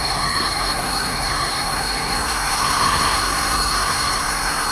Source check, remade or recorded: remade